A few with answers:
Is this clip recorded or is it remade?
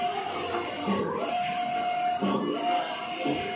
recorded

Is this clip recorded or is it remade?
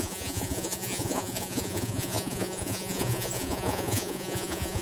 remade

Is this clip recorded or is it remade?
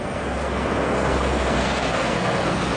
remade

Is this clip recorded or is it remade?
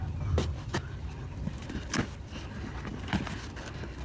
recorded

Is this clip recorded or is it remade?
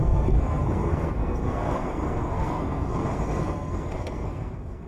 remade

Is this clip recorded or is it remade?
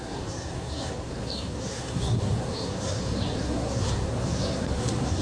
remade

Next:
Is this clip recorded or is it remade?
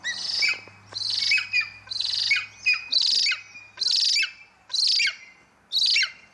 recorded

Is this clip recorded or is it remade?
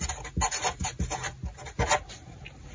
recorded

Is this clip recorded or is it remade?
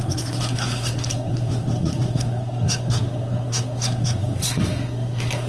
remade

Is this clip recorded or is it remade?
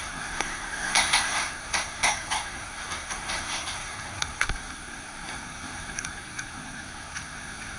remade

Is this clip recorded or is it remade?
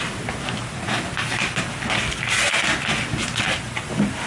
recorded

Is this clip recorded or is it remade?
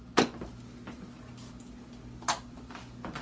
recorded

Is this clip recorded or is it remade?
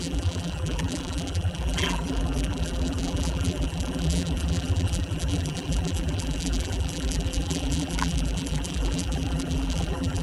remade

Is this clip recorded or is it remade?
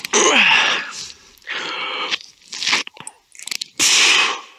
recorded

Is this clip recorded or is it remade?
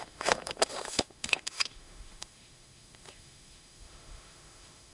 remade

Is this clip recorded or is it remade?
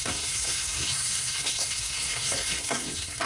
remade